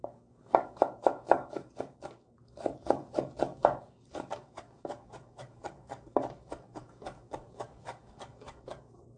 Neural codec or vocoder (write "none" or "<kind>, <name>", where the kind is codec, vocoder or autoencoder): codec, DAC